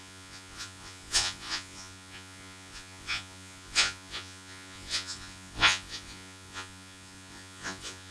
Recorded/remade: remade